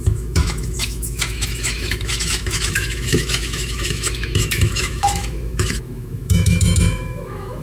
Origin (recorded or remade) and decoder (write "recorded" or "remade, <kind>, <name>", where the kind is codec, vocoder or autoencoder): remade, autoencoder, DAC-VAE